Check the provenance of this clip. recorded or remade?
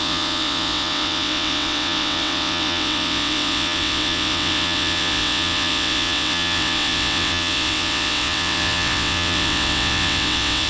remade